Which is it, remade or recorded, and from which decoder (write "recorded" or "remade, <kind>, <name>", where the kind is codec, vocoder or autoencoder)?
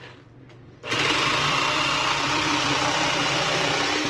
remade, vocoder, BigVGAN v2